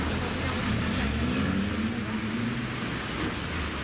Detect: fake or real real